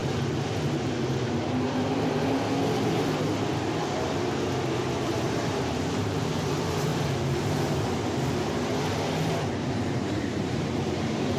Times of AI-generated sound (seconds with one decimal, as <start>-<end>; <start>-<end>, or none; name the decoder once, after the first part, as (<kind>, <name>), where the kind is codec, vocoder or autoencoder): 5.0-6.9 (vocoder, BigVGAN v2); 9.5-11.4